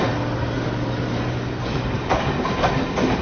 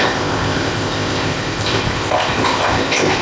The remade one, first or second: second